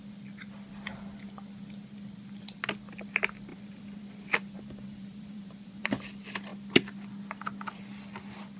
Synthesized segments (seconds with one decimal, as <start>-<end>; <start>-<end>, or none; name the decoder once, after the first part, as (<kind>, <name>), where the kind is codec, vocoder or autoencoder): 3.5-6.0 (vocoder, BigVGAN v2)